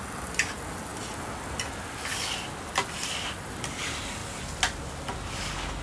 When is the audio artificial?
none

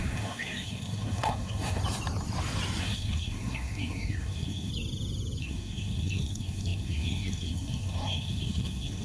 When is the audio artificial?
0.0-1.8 (codec, SNAC); 2.8-4.7; 5.4-9.0

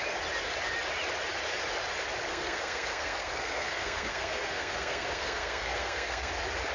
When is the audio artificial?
2.3-6.3 (codec, SNAC)

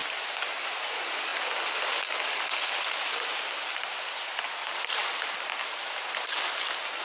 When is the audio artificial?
none

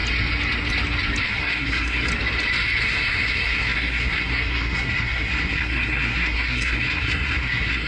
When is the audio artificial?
1.2-2.1 (codec, SNAC); 2.8-7.9

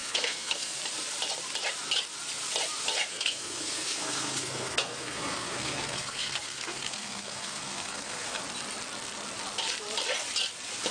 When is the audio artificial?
0.0-0.8 (codec, SNAC); 3.1-8.4